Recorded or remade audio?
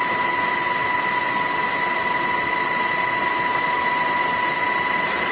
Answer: recorded